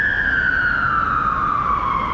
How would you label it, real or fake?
real